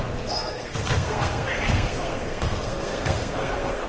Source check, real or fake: fake